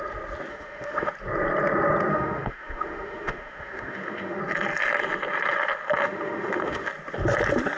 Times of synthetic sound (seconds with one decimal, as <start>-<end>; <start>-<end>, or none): 0.5-1.1; 2.1-4.4; 6.0-6.9